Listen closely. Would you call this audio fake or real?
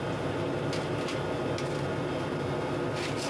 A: real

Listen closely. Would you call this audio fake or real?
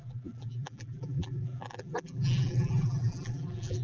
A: fake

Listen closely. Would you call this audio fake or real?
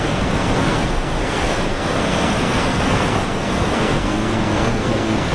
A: fake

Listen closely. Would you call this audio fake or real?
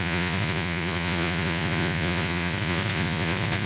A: fake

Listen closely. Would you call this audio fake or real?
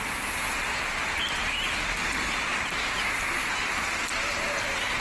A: real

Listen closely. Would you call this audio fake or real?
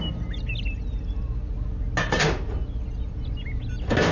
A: real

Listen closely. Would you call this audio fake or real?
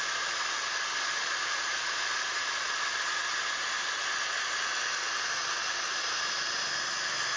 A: real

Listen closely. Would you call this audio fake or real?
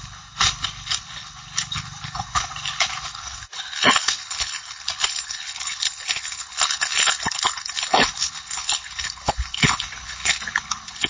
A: fake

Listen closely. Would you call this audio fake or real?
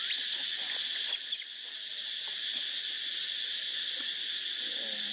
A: real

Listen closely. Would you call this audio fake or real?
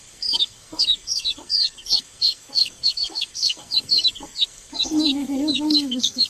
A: fake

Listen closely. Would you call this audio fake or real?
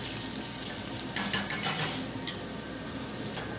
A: real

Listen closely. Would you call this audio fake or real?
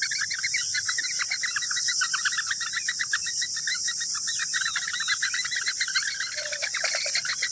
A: real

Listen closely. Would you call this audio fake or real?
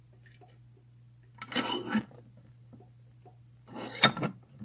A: real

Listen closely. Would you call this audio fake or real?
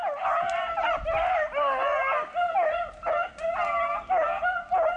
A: real